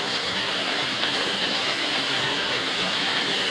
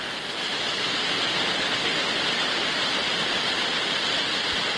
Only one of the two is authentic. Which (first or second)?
second